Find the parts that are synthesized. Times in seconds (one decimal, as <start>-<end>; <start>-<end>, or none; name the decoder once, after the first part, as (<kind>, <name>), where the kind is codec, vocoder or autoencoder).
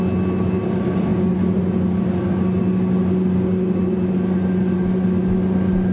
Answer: none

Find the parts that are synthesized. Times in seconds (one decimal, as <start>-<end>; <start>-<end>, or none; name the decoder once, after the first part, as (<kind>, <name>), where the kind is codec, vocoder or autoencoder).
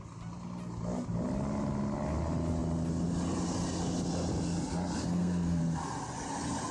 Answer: 5.0-5.6 (codec, SNAC)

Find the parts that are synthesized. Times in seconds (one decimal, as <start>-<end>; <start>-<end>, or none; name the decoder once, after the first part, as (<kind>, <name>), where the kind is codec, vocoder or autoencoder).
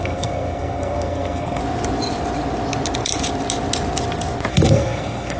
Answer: 0.0-1.6 (codec, SNAC); 4.5-5.4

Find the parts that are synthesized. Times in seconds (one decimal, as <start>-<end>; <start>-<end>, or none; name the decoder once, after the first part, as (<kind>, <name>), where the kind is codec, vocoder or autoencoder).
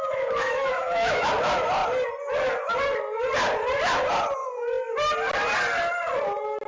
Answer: 0.0-1.3 (autoencoder, DAC-VAE)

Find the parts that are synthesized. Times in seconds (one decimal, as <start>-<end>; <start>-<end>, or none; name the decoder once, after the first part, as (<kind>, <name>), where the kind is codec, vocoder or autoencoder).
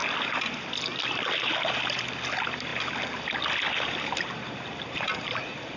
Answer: none